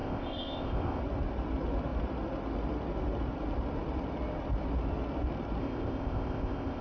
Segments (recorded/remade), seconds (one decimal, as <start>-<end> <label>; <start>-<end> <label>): 0.0-1.0 remade; 1.0-5.6 recorded; 5.6-6.8 remade